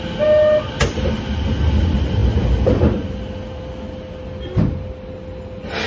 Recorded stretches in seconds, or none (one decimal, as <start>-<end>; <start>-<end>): 0.0-5.9